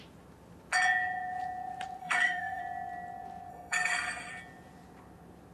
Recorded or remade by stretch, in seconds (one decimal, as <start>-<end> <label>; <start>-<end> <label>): 0.0-2.0 recorded; 2.0-2.6 remade; 2.6-3.5 recorded; 3.5-4.3 remade; 4.3-5.5 recorded